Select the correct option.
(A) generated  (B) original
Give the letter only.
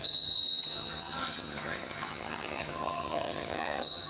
A